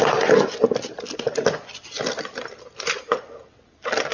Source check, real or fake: real